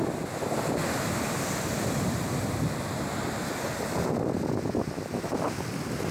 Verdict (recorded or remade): recorded